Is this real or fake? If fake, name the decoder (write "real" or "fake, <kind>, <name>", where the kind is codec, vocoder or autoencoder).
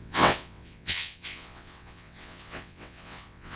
fake, vocoder, WaveNeXt